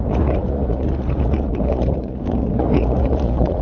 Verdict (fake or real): fake